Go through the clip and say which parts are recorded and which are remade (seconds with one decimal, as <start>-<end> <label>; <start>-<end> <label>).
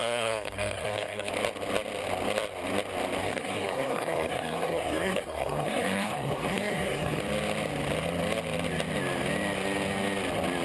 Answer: 0.0-1.3 remade; 1.3-3.2 recorded; 3.2-7.2 remade; 7.2-10.6 recorded